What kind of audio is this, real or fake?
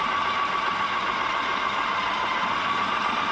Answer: real